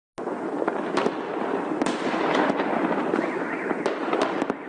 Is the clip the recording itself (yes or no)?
yes